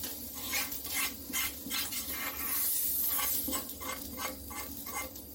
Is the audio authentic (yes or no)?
yes